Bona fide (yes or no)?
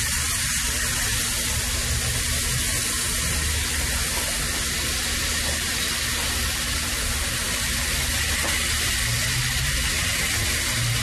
yes